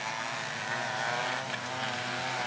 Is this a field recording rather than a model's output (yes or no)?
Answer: yes